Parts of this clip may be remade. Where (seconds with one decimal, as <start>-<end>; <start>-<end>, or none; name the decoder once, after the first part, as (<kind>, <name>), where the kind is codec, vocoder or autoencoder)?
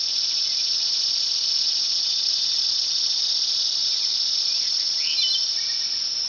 none